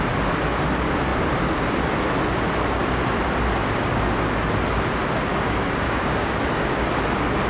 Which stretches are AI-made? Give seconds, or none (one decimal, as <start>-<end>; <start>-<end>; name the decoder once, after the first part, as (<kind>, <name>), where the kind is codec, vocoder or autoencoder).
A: 5.3-6.4 (codec, DAC)